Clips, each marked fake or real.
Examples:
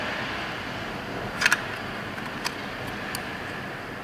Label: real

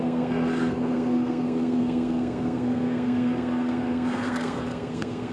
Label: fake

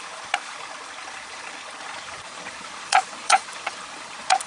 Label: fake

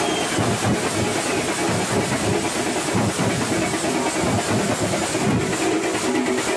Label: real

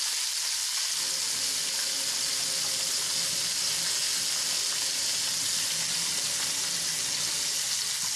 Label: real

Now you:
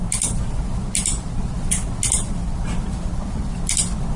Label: real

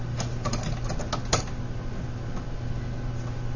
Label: real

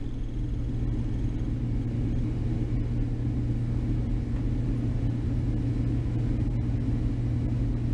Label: real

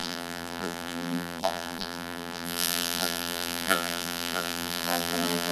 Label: fake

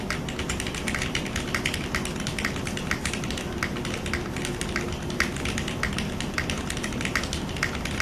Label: real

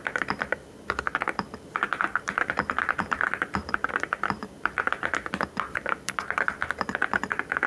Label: fake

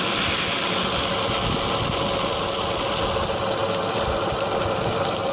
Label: real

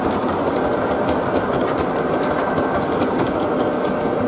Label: real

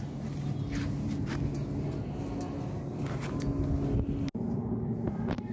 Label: real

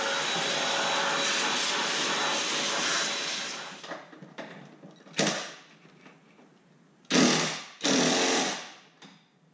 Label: real